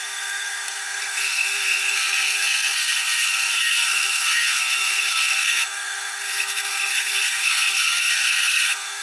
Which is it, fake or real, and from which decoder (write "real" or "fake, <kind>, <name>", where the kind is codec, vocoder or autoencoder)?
fake, codec, SNAC